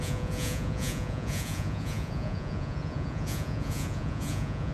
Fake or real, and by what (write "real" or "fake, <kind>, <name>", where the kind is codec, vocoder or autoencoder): fake, vocoder, Vocos